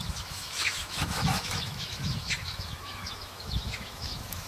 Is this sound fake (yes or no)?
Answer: yes